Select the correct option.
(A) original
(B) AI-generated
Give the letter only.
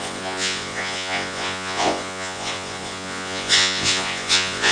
B